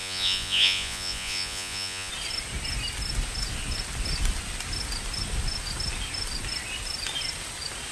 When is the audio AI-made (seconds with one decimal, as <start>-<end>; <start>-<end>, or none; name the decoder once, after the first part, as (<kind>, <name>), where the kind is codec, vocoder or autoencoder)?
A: 0.0-2.1 (vocoder, Vocos)